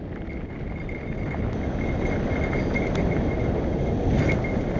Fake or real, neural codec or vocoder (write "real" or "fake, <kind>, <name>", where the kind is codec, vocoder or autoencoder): real